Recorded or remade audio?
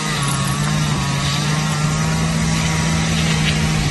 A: recorded